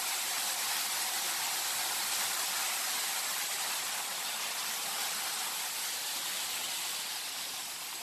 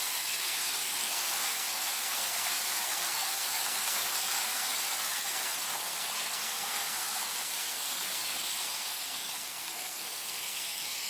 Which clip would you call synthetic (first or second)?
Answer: second